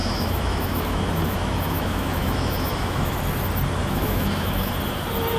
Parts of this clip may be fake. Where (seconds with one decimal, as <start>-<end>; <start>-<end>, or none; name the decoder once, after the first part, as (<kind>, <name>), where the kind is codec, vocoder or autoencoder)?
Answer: 0.0-3.2 (autoencoder, DAC-VAE); 3.8-4.7